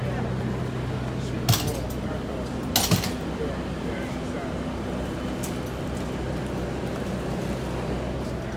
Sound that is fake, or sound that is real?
real